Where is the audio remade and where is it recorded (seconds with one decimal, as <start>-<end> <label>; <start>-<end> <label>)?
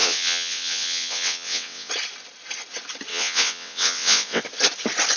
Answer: 0.0-1.9 remade; 1.9-3.1 recorded; 3.1-4.4 remade; 4.4-5.2 recorded